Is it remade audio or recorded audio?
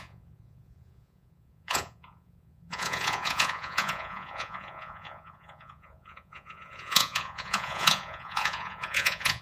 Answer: remade